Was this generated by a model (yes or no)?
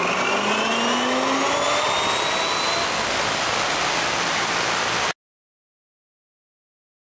no